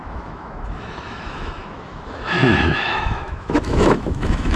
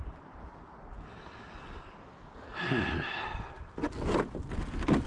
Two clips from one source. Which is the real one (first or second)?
second